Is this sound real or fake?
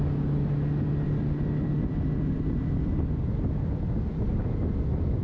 real